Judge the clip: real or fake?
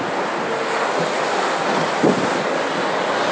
real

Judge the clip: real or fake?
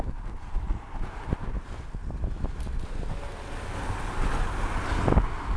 real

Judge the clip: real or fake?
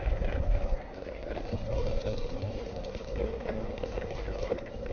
fake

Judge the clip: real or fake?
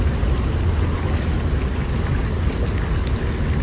real